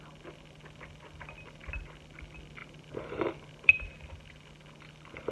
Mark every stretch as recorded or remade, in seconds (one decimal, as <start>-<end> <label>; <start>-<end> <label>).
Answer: 0.0-5.3 recorded